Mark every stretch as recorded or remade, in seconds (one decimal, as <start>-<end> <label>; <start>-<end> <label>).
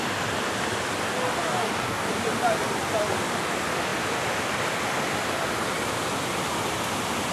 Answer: 0.0-1.4 recorded; 1.4-2.1 remade; 2.1-7.3 recorded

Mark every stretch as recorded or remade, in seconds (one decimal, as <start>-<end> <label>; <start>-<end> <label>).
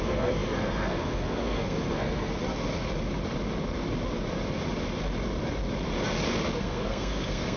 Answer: 0.0-2.3 remade; 2.3-6.6 recorded; 6.6-7.6 remade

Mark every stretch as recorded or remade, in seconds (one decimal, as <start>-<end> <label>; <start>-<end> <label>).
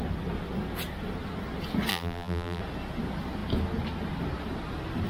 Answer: 0.0-1.9 recorded; 1.9-2.6 remade; 2.6-5.1 recorded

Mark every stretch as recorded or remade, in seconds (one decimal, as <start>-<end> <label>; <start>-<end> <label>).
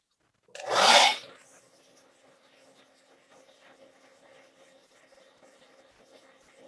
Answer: 0.0-6.7 recorded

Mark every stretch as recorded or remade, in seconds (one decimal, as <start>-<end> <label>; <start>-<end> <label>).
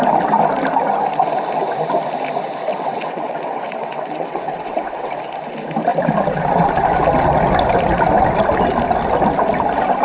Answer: 0.0-2.7 recorded; 2.7-5.1 remade; 5.1-10.0 recorded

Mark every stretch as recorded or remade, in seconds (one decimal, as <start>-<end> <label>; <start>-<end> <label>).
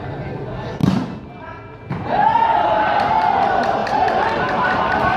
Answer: 0.0-3.8 recorded; 3.8-4.4 remade; 4.4-5.2 recorded